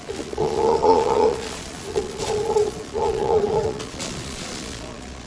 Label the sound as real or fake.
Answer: fake